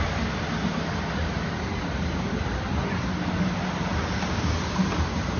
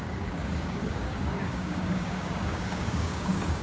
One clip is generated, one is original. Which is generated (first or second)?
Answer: second